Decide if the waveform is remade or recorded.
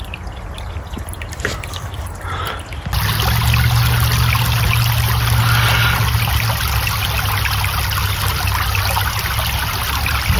recorded